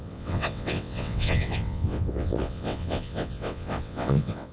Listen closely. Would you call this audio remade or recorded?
remade